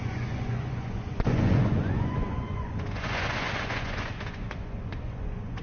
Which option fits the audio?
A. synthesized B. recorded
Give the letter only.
A